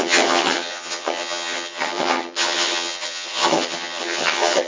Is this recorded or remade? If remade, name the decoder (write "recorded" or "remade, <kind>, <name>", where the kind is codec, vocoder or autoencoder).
remade, vocoder, HiFi-GAN